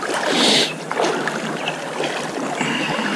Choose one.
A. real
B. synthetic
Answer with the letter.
A